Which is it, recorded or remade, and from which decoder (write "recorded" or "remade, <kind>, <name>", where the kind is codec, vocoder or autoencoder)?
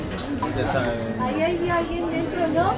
recorded